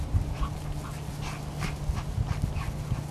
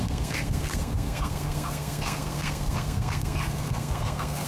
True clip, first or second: first